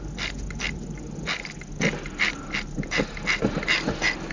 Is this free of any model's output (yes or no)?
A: yes